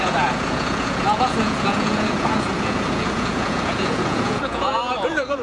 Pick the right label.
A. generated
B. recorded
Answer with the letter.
A